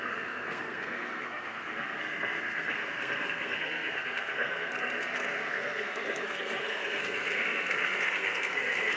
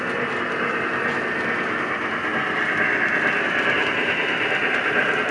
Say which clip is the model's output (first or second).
first